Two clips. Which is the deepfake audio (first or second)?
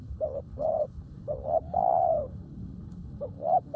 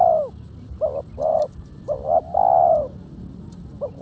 first